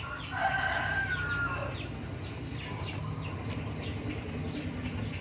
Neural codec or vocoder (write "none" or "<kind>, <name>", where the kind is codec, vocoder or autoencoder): none